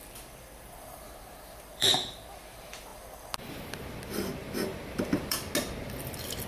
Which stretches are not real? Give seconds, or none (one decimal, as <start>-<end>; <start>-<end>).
1.7-2.4; 4.4-5.4